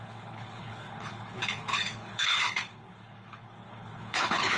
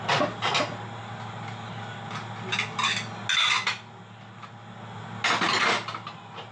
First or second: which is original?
second